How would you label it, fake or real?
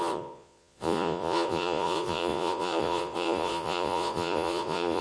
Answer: fake